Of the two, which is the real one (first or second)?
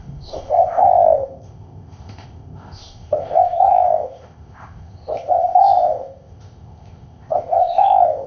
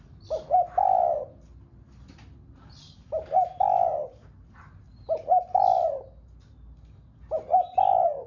second